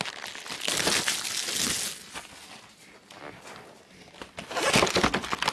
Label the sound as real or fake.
real